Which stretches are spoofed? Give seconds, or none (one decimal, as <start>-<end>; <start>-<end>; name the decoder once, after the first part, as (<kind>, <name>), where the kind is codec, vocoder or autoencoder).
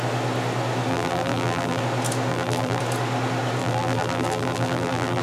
0.9-1.8 (vocoder, BigVGAN v2); 2.3-2.8; 3.6-5.2